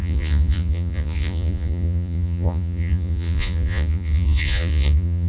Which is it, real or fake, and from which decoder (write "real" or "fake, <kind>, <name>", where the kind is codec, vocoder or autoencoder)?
fake, vocoder, Vocos